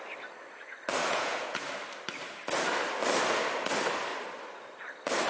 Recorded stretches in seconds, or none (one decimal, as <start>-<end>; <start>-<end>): 0.0-1.0; 1.7-5.3